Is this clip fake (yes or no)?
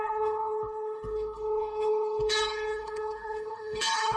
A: yes